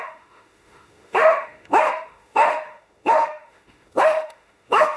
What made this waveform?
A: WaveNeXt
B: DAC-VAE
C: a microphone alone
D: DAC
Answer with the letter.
B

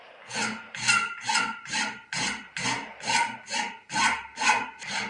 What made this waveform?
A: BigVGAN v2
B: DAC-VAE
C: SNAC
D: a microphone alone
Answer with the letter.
D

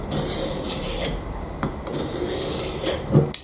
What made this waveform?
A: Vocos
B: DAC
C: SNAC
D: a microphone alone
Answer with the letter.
D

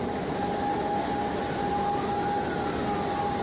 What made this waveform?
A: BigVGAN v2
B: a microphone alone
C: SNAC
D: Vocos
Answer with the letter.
B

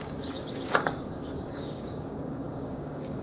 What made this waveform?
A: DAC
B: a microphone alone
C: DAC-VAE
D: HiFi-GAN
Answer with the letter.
A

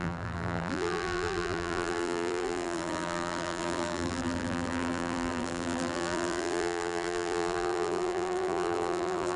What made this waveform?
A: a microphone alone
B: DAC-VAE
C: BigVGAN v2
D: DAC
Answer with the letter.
C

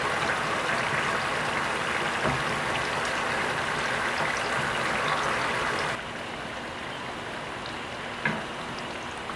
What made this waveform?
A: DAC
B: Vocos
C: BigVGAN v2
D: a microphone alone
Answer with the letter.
D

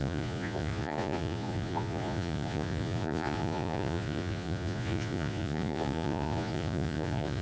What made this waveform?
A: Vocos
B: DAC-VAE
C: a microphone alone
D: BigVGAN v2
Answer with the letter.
A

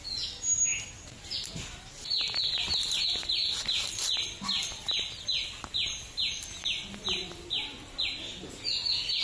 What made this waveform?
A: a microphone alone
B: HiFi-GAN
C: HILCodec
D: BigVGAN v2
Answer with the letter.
A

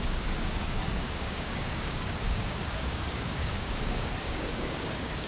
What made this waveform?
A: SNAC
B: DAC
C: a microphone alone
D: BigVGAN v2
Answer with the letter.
B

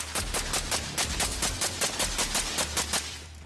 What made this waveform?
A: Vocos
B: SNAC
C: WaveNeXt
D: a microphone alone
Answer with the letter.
D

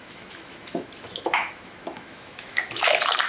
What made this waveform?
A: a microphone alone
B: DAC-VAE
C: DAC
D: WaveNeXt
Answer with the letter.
B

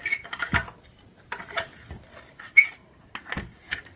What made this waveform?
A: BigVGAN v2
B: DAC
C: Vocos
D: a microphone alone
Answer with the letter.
D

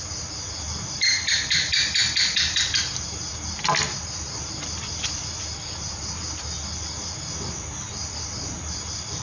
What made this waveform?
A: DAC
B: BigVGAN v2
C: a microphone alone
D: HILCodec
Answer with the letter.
C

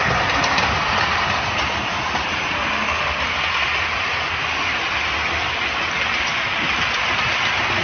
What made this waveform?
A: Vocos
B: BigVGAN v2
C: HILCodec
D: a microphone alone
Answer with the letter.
D